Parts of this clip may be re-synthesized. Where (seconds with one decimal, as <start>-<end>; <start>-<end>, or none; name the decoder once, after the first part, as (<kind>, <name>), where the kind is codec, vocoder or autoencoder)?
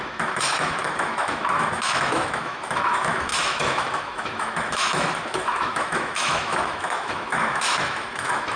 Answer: 0.0-8.6 (autoencoder, DAC-VAE)